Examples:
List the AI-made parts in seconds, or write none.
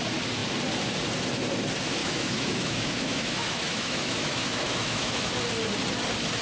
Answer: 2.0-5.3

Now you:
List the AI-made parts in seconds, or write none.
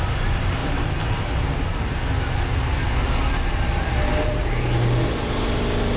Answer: none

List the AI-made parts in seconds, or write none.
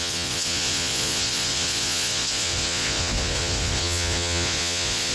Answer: 0.0-5.1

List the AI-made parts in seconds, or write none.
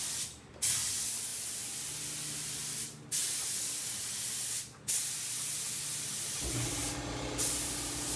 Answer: none